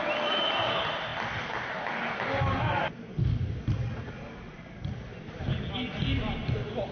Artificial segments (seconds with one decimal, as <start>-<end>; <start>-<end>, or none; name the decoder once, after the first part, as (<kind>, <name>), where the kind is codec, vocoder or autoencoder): none